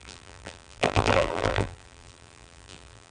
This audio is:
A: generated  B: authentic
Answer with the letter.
A